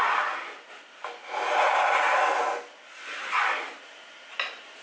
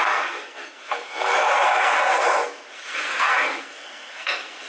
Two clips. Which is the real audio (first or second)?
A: first